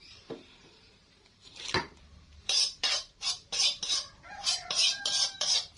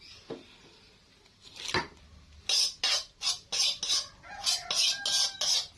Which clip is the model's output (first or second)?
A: first